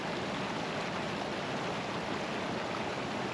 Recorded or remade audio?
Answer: recorded